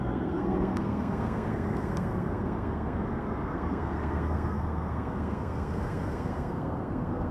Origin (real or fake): fake